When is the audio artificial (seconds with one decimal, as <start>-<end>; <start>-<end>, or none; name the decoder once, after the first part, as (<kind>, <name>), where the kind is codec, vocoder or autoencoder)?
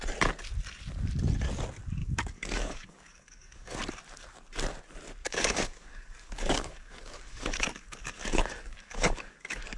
2.0-3.8 (codec, DAC); 5.2-9.8